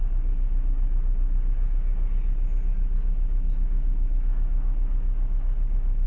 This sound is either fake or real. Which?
real